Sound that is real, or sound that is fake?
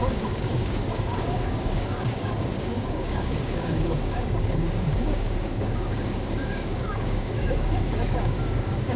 fake